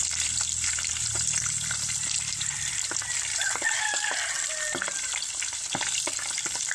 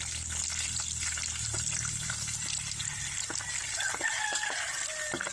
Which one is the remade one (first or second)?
first